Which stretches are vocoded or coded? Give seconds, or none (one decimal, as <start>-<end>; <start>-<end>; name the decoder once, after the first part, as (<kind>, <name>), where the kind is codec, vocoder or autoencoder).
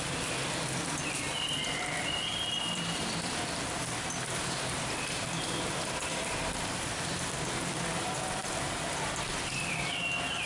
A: 0.0-10.5 (vocoder, BigVGAN v2)